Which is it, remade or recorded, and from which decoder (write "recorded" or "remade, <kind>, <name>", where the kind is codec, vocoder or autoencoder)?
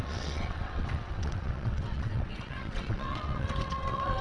remade, vocoder, WaveNeXt